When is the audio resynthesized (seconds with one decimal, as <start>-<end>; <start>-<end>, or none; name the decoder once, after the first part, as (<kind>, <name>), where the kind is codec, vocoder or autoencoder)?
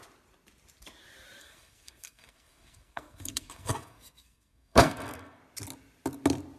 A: 1.4-5.4 (codec, SNAC)